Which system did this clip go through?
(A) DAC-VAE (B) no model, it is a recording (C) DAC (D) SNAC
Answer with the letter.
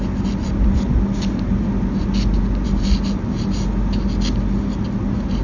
B